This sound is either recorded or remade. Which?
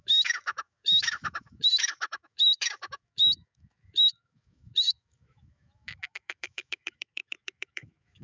remade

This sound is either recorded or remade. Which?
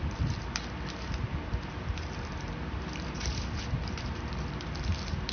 remade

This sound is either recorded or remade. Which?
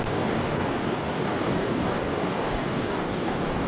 remade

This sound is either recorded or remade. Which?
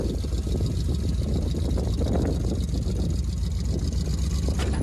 recorded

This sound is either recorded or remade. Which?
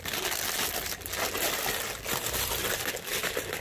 recorded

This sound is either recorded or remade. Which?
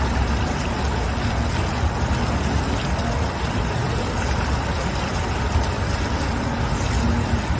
recorded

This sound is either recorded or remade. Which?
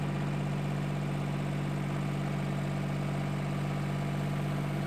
recorded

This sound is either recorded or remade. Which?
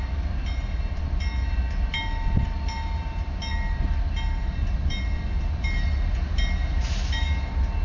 recorded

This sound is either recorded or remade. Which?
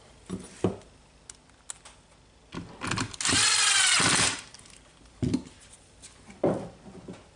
recorded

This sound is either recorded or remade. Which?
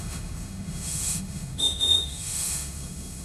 remade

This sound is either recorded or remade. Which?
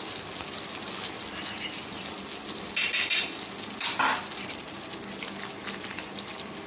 recorded